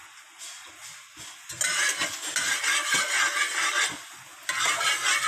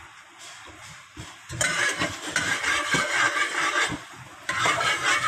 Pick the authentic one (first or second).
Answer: first